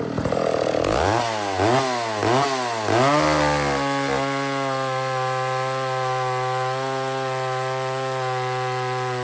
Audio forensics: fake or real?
real